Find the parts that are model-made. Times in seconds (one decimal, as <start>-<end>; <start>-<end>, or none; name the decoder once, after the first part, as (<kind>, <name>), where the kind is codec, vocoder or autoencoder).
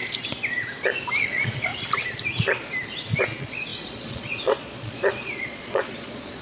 1.2-1.7 (vocoder, Vocos); 3.2-6.4